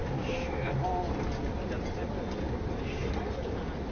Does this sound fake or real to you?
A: real